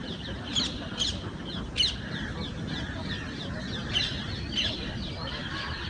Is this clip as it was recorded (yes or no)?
yes